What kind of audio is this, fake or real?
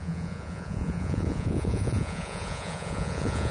fake